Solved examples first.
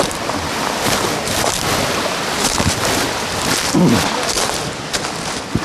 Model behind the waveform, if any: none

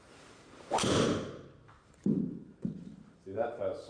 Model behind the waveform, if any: vocoder, BigVGAN v2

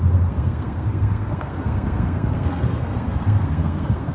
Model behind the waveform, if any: codec, SNAC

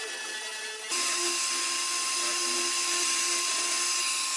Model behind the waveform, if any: none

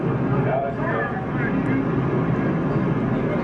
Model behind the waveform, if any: none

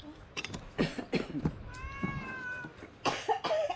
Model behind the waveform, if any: none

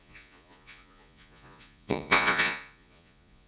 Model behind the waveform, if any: vocoder, Vocos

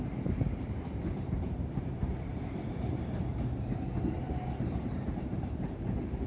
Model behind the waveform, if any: vocoder, BigVGAN v2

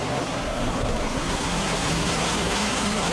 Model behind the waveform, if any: codec, SNAC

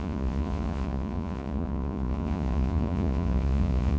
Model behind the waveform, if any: vocoder, Vocos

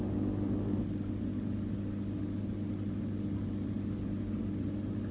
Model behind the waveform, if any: none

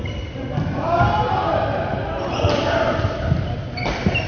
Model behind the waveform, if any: none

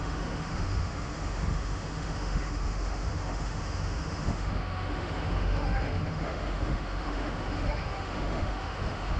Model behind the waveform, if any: autoencoder, DAC-VAE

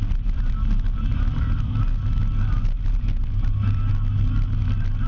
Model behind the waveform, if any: none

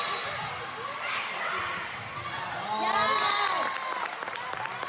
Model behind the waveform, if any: none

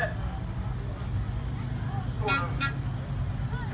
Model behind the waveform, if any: none